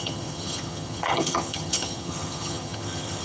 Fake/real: fake